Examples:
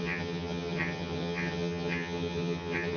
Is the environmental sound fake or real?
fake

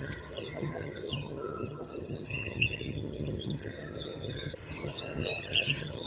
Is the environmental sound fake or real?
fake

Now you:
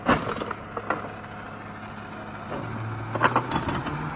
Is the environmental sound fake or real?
real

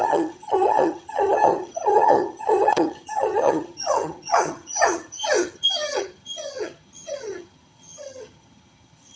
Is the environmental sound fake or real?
fake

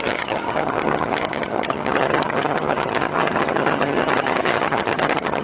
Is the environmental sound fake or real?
fake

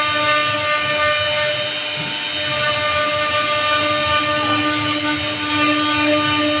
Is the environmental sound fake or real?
real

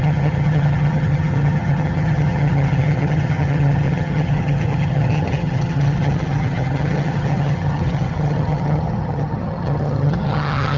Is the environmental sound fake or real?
fake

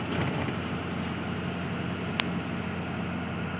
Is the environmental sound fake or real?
real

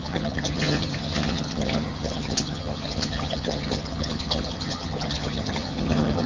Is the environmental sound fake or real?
fake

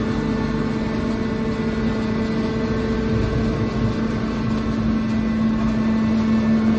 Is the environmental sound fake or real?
real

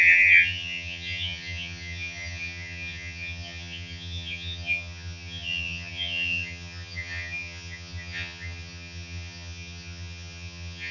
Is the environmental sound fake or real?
fake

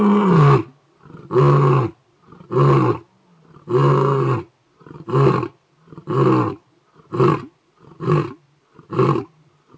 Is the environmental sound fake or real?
real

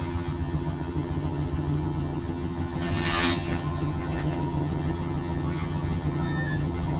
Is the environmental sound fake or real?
fake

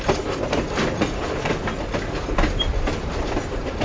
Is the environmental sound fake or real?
real